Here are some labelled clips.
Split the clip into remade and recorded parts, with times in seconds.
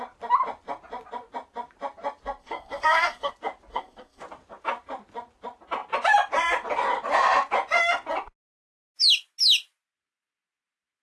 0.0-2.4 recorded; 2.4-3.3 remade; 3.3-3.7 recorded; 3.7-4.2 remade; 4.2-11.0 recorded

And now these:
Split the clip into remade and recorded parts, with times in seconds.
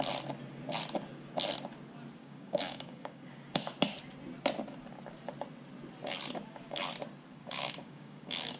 0.0-2.2 recorded; 2.2-3.3 remade; 3.3-7.4 recorded; 7.4-8.6 remade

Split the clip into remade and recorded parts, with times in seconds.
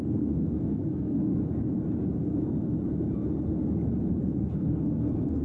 0.0-1.3 remade; 1.3-4.1 recorded; 4.1-5.4 remade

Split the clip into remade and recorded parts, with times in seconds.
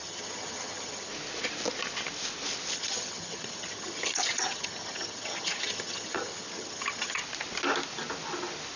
0.0-1.1 remade; 1.1-2.7 recorded; 2.7-7.2 remade; 7.2-8.8 recorded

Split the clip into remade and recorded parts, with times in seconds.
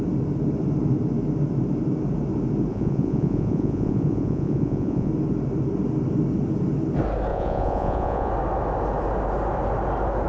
0.0-2.7 recorded; 2.7-5.1 remade; 5.1-7.3 recorded; 7.3-8.3 remade; 8.3-10.3 recorded